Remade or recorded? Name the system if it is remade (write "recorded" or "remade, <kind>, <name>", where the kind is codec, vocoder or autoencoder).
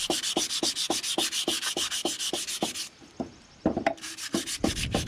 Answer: recorded